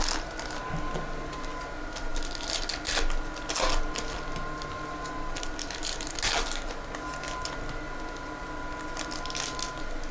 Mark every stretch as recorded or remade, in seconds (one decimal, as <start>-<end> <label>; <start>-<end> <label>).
0.0-10.1 recorded